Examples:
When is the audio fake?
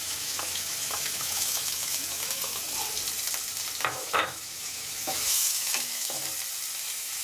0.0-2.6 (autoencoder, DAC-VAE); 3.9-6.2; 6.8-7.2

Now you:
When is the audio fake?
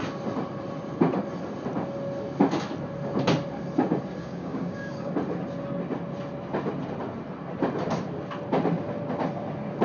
4.2-5.1 (codec, DAC)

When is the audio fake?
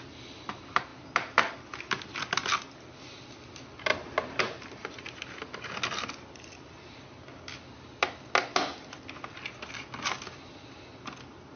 3.9-4.4 (vocoder, BigVGAN v2)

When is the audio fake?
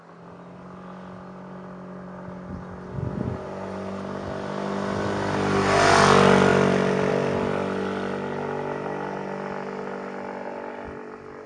none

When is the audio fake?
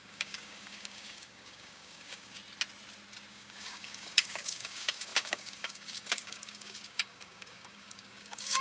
0.0-2.4 (codec, DAC); 3.3-8.6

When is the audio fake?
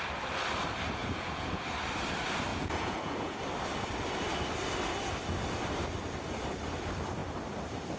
1.0-1.6 (vocoder, Vocos); 2.5-3.4